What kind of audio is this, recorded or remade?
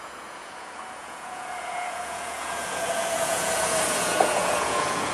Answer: remade